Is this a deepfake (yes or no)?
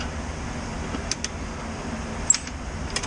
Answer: no